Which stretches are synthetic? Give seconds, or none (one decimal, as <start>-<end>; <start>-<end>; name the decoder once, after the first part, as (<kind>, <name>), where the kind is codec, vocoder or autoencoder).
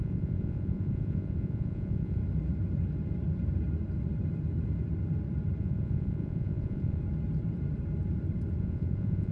0.0-2.2 (vocoder, Vocos); 5.6-7.0; 8.6-9.3